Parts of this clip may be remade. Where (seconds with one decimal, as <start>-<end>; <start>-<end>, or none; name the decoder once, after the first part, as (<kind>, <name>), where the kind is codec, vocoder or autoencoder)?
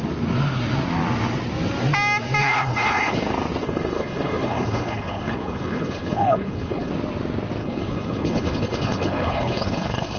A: 2.4-3.2 (codec, HILCodec); 3.6-6.9; 7.6-10.2